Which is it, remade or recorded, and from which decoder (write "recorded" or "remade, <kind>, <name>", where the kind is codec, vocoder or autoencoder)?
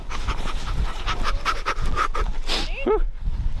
recorded